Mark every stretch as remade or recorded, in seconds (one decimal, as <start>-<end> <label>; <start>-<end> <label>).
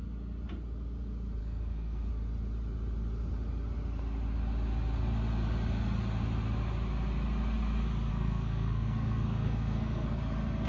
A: 0.0-1.4 recorded; 1.4-2.1 remade; 2.1-8.1 recorded; 8.1-10.2 remade; 10.2-10.7 recorded